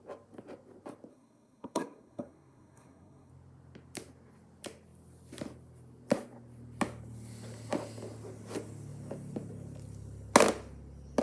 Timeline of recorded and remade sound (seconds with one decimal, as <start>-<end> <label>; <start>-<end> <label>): 0.0-1.1 recorded; 1.1-3.3 remade; 3.3-11.2 recorded